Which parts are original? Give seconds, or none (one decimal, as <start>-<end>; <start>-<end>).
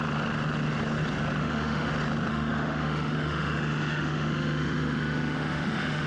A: 0.0-1.4; 1.9-2.3